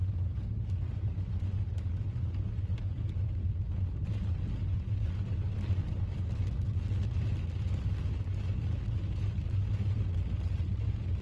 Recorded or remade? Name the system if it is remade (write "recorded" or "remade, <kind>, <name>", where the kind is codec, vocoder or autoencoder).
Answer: recorded